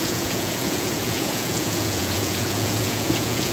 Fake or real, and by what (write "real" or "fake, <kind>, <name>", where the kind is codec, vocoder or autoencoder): fake, vocoder, Vocos